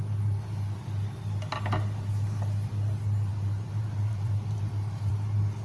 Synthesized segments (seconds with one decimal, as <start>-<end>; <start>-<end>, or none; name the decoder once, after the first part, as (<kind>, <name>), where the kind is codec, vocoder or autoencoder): 3.3-5.1 (vocoder, BigVGAN v2)